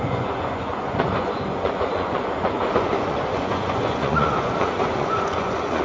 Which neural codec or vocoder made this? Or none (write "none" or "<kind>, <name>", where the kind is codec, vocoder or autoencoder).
vocoder, Vocos